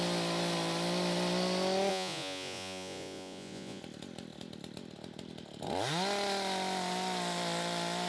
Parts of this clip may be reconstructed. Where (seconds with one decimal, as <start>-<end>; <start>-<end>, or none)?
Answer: 1.9-3.8

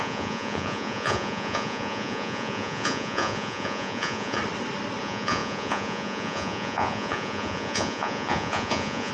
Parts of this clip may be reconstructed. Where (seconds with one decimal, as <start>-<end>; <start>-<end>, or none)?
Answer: 0.0-4.4; 5.0-9.1

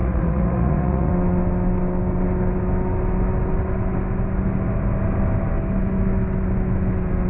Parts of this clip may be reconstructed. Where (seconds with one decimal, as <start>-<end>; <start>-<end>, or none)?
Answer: 0.0-1.1

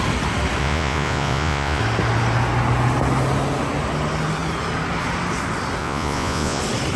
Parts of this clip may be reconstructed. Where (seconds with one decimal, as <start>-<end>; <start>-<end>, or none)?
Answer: 0.6-1.8; 5.8-6.6